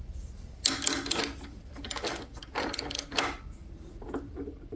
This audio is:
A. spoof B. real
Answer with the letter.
B